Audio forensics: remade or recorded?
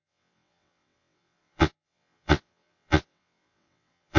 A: remade